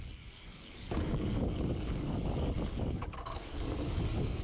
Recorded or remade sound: remade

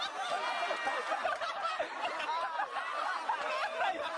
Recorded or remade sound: recorded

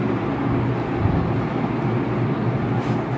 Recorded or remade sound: recorded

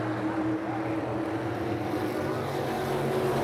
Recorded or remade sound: recorded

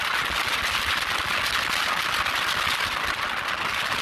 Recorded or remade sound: recorded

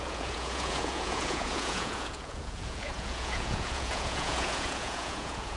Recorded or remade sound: remade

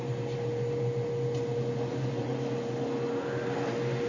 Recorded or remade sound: recorded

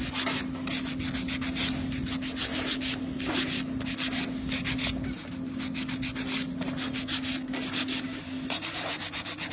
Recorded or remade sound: recorded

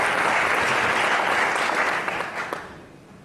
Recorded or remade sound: recorded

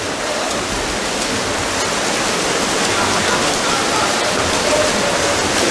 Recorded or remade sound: recorded